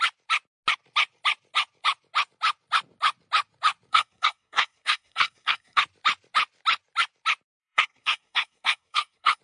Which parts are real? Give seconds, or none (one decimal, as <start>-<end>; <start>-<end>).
0.0-3.9; 5.8-7.6